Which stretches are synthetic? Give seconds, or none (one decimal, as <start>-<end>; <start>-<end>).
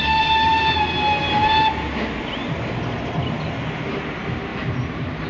none